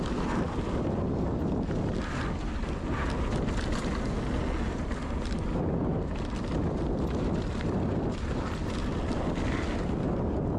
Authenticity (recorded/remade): recorded